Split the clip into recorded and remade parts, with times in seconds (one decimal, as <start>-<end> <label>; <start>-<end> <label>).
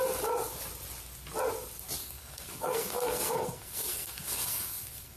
0.0-2.0 recorded; 2.0-5.2 remade